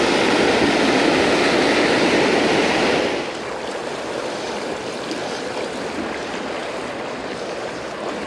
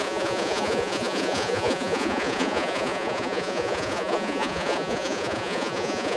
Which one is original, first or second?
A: first